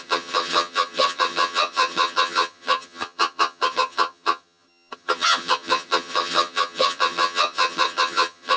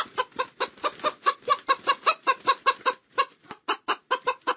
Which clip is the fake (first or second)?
first